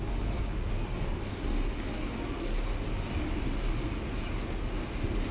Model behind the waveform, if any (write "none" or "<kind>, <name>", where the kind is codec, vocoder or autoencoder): none